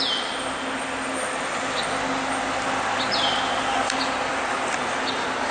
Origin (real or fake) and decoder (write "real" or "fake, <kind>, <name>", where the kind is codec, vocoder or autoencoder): real